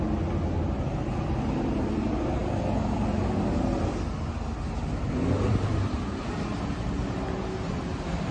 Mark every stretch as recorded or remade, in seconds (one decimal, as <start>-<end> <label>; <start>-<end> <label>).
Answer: 0.0-8.3 recorded